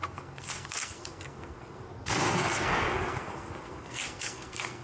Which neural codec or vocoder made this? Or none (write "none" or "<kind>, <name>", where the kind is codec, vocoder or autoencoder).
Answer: codec, SNAC